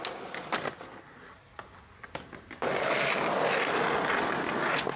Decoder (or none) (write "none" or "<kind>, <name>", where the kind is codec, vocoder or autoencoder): none